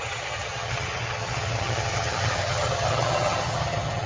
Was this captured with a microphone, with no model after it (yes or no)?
no